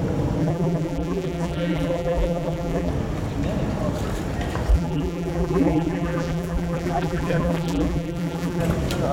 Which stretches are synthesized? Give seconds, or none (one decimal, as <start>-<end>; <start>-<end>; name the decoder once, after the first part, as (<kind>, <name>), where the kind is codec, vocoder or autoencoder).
0.4-2.9 (vocoder, BigVGAN v2); 4.7-8.6